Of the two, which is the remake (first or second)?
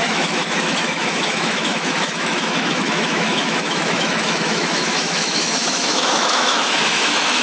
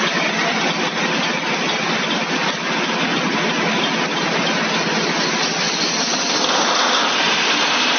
first